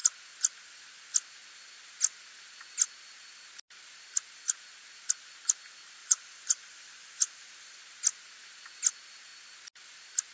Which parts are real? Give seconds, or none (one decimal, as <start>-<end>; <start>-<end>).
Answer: 0.0-6.0; 7.8-10.3